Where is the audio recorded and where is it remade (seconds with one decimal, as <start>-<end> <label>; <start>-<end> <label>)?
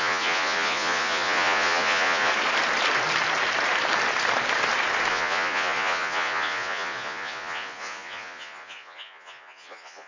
0.0-2.3 remade; 2.3-5.1 recorded; 5.1-10.1 remade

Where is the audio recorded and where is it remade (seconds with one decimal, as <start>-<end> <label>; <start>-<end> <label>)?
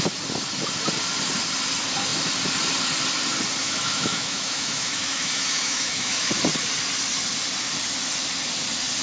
0.0-3.6 recorded; 3.6-6.3 remade; 6.3-9.0 recorded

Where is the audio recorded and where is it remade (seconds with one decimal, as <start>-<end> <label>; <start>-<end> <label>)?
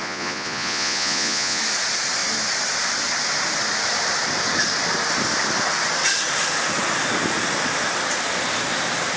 0.0-1.6 remade; 1.6-9.2 recorded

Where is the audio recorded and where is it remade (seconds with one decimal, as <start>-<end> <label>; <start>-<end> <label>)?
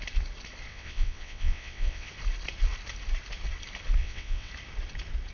0.0-0.7 recorded; 0.7-2.1 remade; 2.1-4.0 recorded; 4.0-4.5 remade; 4.5-5.3 recorded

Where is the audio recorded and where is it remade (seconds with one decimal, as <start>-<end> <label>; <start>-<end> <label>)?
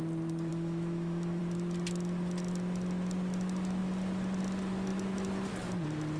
0.0-0.5 recorded; 0.5-1.4 remade; 1.4-6.2 recorded